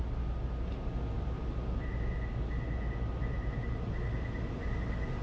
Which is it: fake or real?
real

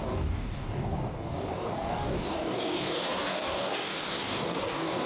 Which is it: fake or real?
fake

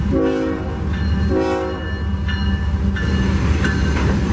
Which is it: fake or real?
real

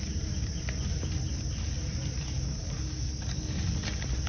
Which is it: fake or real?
real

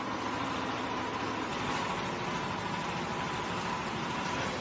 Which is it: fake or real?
real